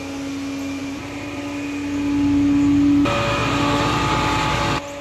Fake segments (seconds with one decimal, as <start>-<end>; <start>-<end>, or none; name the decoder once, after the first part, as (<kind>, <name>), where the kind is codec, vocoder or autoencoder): 0.8-1.4 (vocoder, BigVGAN v2); 3.4-4.5